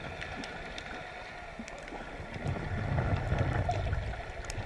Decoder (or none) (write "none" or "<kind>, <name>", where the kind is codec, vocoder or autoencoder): none